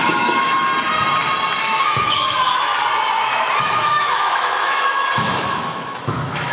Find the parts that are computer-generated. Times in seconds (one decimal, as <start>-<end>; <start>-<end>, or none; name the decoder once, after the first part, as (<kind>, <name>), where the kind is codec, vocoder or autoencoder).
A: 0.0-0.7 (autoencoder, DAC-VAE); 1.6-2.7; 3.6-6.5